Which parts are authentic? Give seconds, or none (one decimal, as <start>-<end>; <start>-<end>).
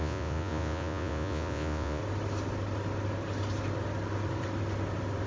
2.0-5.3